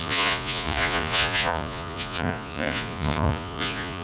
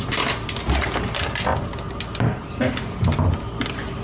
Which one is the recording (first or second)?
second